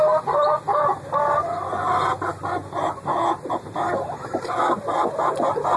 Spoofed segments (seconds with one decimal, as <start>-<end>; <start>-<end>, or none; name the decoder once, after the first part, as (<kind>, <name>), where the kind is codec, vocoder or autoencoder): none